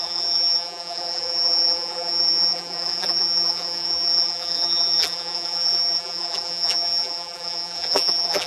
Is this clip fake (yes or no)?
yes